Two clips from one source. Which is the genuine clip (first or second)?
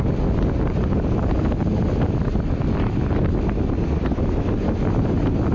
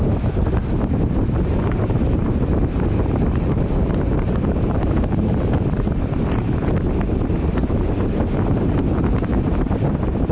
first